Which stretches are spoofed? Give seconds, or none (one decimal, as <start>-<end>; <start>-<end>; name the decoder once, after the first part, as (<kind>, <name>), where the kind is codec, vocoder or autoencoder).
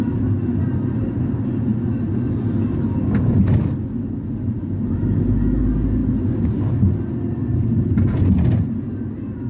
none